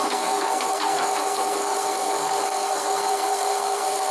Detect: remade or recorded remade